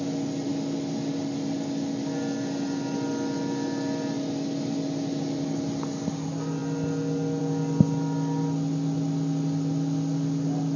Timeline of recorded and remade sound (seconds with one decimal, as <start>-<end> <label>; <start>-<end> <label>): 0.0-10.8 recorded